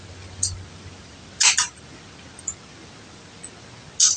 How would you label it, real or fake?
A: real